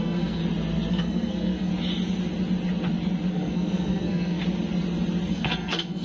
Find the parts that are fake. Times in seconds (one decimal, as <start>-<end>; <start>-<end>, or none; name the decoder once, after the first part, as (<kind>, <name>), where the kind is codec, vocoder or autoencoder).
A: 0.0-0.4 (codec, SNAC); 0.9-1.7; 3.3-4.4; 5.3-6.0

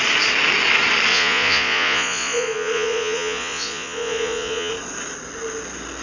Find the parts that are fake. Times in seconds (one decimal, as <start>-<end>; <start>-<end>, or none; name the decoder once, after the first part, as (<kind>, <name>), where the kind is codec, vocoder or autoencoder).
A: 1.1-4.7 (vocoder, Vocos)

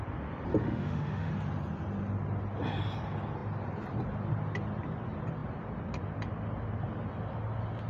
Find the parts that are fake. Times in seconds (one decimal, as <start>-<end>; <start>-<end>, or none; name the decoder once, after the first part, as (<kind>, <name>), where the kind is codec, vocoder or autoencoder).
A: 0.6-1.3 (autoencoder, DAC-VAE)

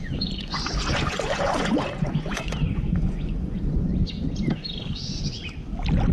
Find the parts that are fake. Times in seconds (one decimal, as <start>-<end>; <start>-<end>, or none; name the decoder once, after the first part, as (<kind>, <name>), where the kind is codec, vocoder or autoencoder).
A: 0.0-3.9 (vocoder, Vocos)